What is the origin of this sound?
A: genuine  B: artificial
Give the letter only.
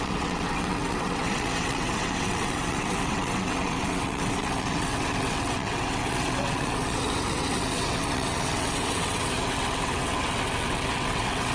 B